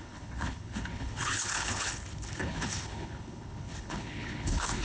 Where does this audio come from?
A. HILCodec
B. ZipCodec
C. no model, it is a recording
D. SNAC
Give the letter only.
A